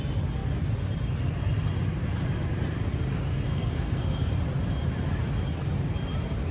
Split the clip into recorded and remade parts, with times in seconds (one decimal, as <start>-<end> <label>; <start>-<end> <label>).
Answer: 0.0-3.3 recorded; 3.3-4.3 remade; 4.3-6.5 recorded